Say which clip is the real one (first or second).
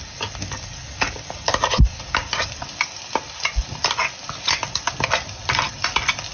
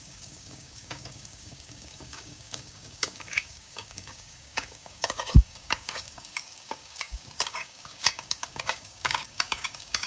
first